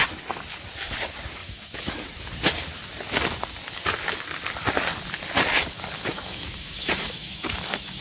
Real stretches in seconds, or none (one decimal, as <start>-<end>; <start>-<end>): 0.0-1.4; 2.0-6.1; 7.4-8.0